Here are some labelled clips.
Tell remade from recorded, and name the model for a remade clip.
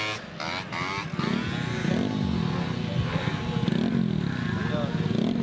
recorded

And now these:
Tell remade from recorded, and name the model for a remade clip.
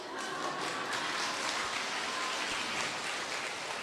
recorded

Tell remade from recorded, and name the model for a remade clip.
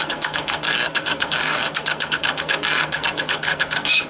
remade, codec, SNAC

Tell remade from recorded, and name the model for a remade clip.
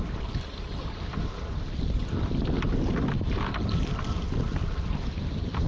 recorded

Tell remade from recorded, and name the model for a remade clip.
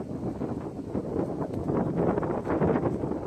recorded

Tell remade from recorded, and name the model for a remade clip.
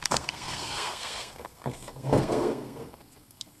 remade, codec, SNAC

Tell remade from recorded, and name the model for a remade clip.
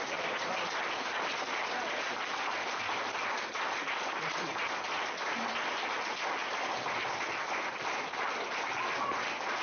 recorded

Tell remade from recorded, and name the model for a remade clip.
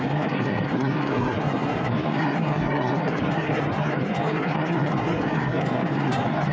remade, codec, SNAC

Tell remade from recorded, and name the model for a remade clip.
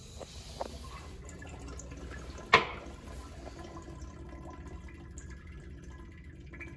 recorded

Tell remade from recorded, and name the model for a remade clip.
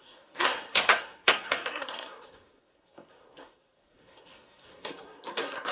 remade, codec, SNAC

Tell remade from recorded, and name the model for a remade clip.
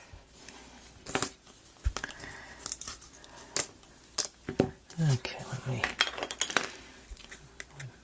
recorded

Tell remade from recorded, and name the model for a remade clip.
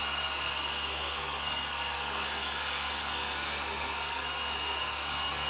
remade, codec, SNAC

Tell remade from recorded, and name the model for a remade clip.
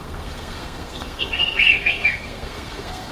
remade, codec, SNAC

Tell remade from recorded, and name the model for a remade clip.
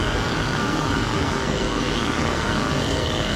remade, codec, SNAC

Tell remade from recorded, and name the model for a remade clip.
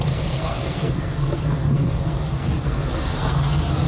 remade, codec, SNAC